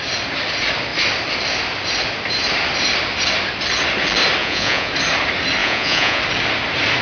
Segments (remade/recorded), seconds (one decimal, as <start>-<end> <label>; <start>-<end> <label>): 0.0-4.4 recorded; 4.4-4.9 remade; 4.9-5.6 recorded; 5.6-6.2 remade; 6.2-7.0 recorded